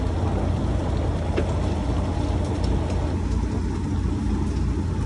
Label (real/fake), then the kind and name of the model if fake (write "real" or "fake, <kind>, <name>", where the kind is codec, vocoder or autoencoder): real